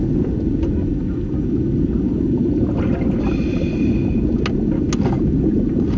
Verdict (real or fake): real